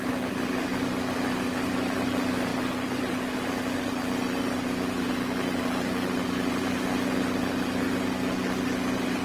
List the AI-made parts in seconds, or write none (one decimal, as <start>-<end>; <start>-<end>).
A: none